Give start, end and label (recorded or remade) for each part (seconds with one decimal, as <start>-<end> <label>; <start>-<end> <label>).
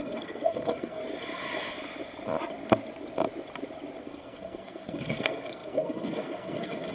0.0-1.0 remade; 1.0-4.0 recorded; 4.0-6.9 remade